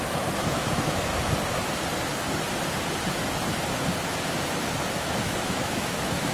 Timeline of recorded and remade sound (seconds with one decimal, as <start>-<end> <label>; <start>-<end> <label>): 0.0-1.1 remade; 1.1-4.9 recorded; 4.9-6.3 remade